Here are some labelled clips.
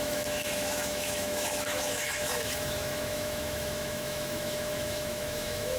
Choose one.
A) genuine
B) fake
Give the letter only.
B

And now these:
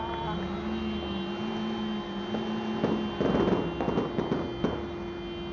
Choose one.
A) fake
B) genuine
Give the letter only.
B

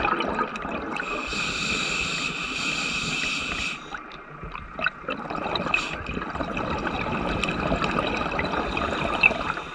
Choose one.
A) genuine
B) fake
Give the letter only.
A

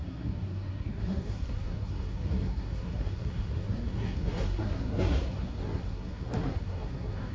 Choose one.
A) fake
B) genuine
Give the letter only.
A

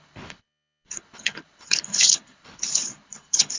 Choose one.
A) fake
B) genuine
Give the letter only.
A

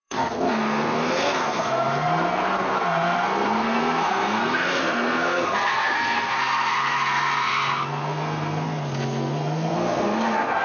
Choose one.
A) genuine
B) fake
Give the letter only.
B